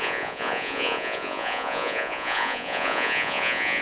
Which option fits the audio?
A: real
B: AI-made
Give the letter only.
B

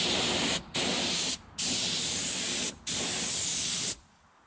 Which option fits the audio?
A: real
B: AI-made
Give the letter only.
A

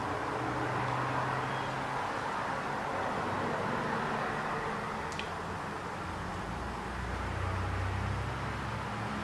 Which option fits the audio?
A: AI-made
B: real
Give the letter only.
B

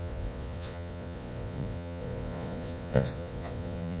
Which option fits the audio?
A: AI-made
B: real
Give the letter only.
A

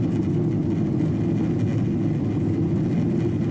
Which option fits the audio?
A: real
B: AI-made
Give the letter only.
A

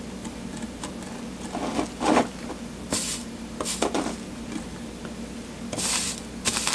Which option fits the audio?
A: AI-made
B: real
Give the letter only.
B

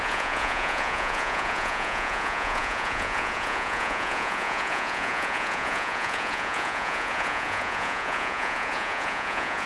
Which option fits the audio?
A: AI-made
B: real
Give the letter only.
A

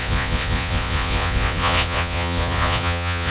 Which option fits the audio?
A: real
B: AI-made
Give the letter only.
B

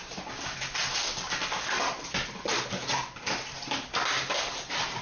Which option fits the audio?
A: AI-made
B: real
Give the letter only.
B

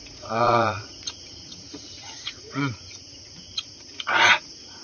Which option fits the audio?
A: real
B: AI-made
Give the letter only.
B